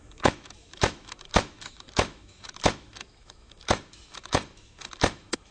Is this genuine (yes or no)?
no